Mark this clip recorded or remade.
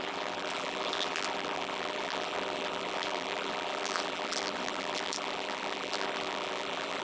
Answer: remade